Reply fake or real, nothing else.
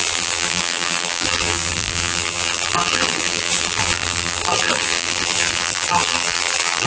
fake